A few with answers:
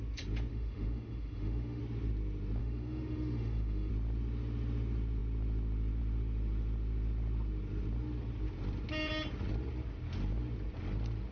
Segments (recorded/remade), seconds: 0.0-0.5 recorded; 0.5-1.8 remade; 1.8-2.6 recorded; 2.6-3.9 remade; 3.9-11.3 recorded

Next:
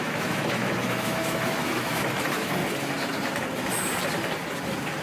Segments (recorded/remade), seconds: 0.0-2.6 remade; 2.6-5.0 recorded

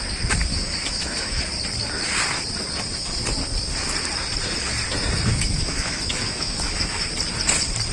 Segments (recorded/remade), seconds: 0.0-0.5 recorded; 0.5-1.4 remade; 1.4-5.3 recorded; 5.3-7.1 remade; 7.1-7.9 recorded

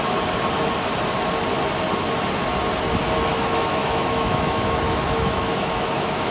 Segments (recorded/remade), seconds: 0.0-3.3 recorded; 3.3-6.3 remade

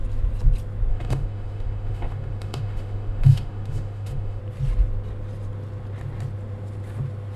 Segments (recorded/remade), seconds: 0.0-0.9 recorded; 0.9-4.4 remade; 4.4-7.4 recorded

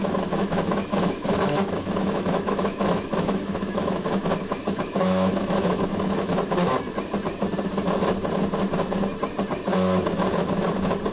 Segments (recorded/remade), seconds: 0.0-6.3 remade; 6.3-11.1 recorded

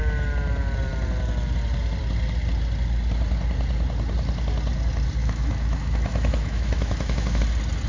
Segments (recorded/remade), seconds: 0.0-5.2 recorded; 5.2-7.4 remade; 7.4-7.9 recorded